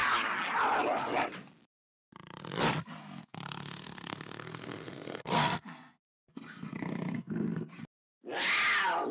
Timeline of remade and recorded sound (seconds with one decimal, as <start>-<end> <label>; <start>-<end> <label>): 0.0-3.0 recorded; 3.0-7.7 remade; 7.7-9.1 recorded

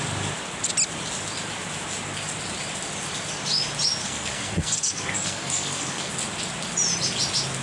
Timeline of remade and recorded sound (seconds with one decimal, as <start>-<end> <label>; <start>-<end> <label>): 0.0-4.0 recorded; 4.0-6.1 remade; 6.1-7.6 recorded